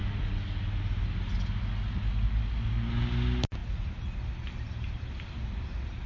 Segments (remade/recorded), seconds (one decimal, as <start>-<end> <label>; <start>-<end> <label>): 0.0-6.1 recorded